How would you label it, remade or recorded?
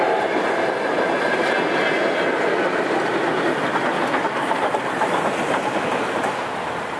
recorded